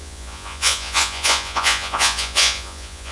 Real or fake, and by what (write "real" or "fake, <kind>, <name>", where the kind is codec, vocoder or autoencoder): fake, vocoder, Vocos